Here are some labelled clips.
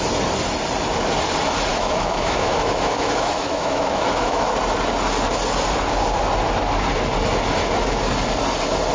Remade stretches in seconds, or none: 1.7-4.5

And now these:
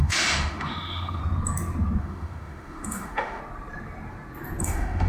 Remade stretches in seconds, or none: 0.0-1.2; 2.0-3.4; 4.6-5.1

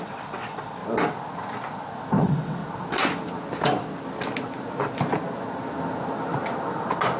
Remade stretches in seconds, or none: 0.0-0.8; 2.2-2.6